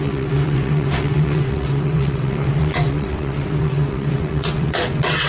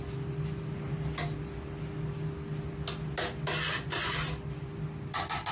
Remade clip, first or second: first